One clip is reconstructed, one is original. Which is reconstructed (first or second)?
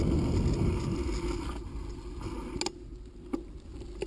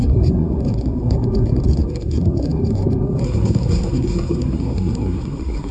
second